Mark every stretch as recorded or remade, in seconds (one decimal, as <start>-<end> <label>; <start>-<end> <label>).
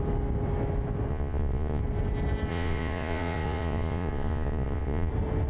0.0-1.1 recorded; 1.1-1.8 remade; 1.8-2.5 recorded; 2.5-5.1 remade; 5.1-5.5 recorded